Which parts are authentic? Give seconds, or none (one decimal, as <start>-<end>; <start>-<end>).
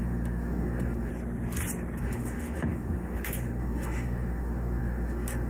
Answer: 1.1-2.0